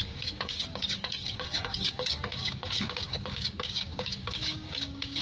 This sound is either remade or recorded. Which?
remade